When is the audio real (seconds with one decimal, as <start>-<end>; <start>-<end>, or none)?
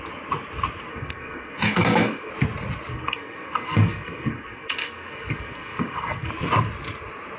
0.0-0.9; 2.3-2.9; 6.3-7.4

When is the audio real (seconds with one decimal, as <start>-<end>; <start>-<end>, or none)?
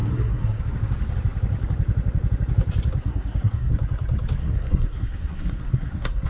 0.6-3.0; 3.7-4.4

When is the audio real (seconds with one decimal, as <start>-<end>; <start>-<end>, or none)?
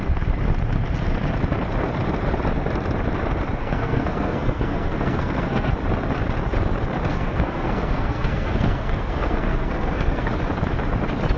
0.0-3.6; 5.7-7.1; 10.3-11.4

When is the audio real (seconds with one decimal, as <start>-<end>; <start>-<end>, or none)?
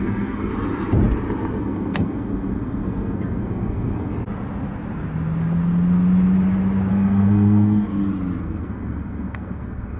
0.5-1.6; 4.1-6.9; 7.9-8.4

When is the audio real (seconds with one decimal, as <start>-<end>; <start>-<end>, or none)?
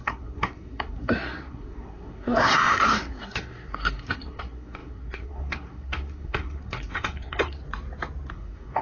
7.6-8.3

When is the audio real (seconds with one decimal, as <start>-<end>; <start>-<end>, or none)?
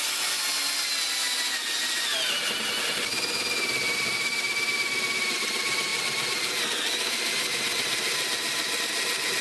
0.0-9.4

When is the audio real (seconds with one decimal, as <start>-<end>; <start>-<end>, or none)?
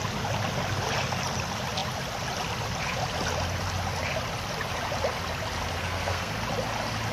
0.0-5.8; 6.3-7.1